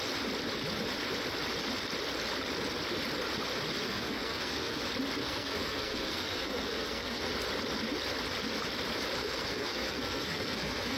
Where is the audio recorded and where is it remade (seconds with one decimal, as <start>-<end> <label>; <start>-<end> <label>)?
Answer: 0.0-3.8 recorded; 3.8-4.8 remade; 4.8-5.2 recorded; 5.2-7.3 remade; 7.3-9.2 recorded; 9.2-11.0 remade